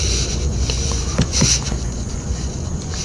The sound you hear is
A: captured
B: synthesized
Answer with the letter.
B